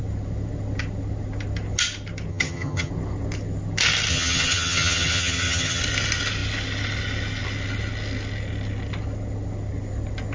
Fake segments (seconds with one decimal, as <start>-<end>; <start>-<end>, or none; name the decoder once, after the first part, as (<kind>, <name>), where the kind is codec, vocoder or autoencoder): 2.3-2.9 (vocoder, HiFi-GAN); 4.1-5.8